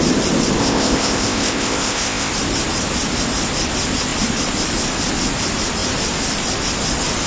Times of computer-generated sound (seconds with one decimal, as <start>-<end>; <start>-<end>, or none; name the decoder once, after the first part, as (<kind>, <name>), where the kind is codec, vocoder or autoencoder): 0.6-2.3 (codec, ZipCodec)